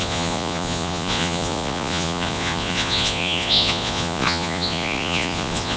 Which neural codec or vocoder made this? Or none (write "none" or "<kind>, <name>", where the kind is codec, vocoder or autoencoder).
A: vocoder, Vocos